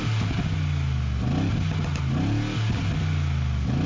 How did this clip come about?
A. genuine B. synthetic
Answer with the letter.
A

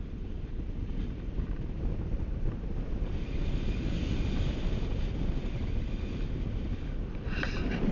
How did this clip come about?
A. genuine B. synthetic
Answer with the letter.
A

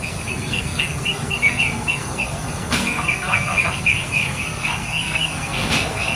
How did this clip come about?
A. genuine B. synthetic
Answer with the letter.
B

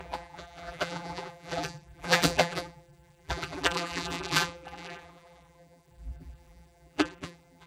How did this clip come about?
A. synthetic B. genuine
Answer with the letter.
A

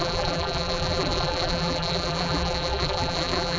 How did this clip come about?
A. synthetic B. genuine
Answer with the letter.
A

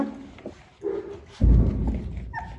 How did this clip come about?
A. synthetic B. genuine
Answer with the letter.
B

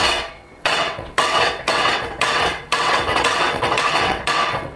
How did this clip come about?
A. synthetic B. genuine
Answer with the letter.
A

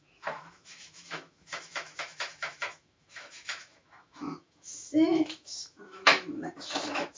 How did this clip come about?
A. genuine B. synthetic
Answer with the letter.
B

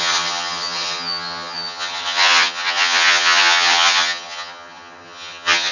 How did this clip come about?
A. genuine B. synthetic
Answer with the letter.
B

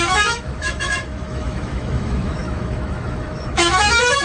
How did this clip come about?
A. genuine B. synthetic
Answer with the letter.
B